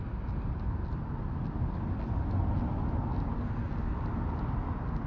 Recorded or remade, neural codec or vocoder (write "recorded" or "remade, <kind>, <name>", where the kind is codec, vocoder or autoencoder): recorded